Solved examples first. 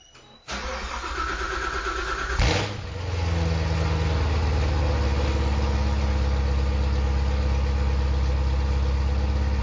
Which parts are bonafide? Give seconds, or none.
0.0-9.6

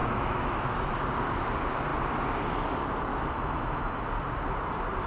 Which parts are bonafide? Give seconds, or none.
0.9-3.1; 4.0-5.1